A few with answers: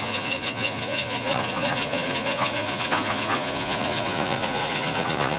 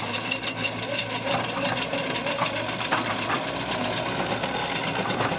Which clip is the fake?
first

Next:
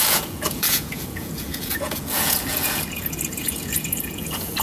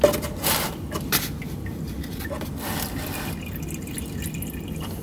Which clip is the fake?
first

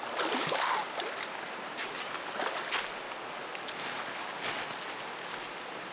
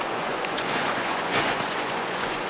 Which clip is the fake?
second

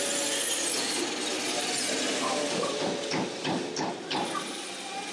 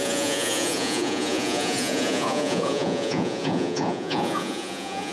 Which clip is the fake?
second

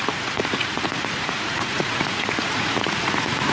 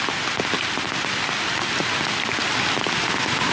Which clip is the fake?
first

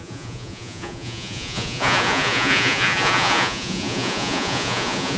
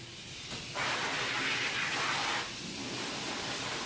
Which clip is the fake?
first